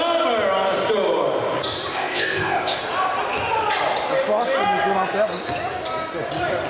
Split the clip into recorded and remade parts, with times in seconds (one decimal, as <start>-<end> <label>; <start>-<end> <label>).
0.0-1.9 recorded; 1.9-2.8 remade; 2.8-6.7 recorded